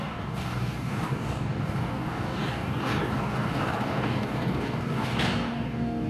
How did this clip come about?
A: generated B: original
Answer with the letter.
A